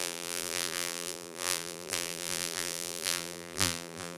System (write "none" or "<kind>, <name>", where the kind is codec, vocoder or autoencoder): vocoder, BigVGAN v2